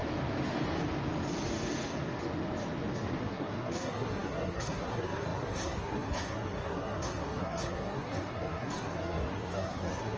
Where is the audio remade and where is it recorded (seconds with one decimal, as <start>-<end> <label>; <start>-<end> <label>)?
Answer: 0.0-3.2 recorded; 3.2-10.2 remade